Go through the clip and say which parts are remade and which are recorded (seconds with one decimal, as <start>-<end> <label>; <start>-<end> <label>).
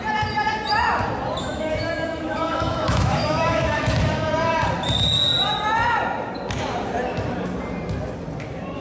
0.0-1.4 recorded; 1.4-3.8 remade; 3.8-8.8 recorded